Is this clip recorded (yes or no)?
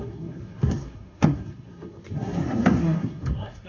no